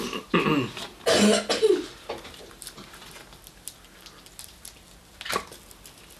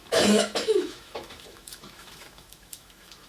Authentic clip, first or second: first